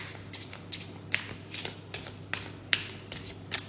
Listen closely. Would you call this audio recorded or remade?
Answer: recorded